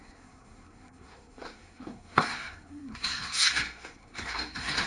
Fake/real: fake